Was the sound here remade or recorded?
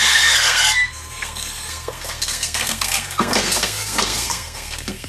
remade